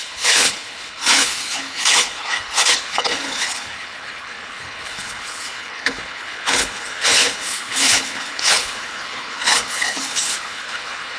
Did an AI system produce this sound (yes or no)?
yes